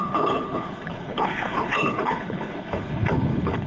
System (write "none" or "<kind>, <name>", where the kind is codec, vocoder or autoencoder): codec, HILCodec